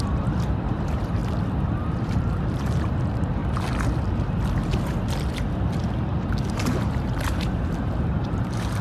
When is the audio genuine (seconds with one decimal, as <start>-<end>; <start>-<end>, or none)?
1.2-2.0; 3.4-6.5